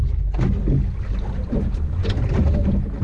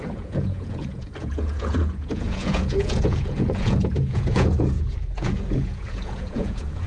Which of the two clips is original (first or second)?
first